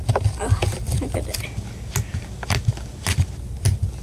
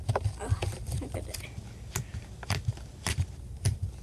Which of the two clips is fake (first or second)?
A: second